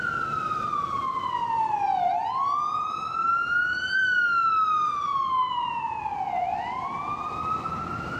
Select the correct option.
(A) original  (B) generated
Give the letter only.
A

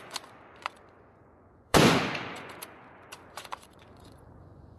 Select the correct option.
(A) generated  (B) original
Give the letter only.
A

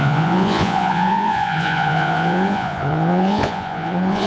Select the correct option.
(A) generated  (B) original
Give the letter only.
A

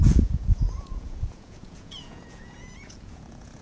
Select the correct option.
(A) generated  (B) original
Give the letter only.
A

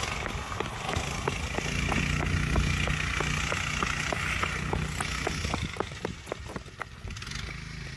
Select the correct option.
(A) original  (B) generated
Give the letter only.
A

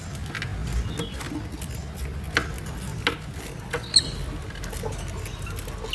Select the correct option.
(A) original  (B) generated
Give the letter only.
A